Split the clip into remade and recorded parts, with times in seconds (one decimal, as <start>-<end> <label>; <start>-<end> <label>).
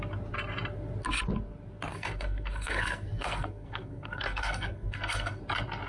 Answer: 0.0-1.9 recorded; 1.9-5.4 remade; 5.4-5.9 recorded